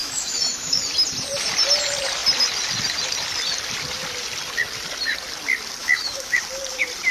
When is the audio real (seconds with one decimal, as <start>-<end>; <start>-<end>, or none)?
0.8-5.8; 6.4-7.1